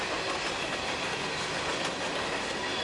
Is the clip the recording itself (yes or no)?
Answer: yes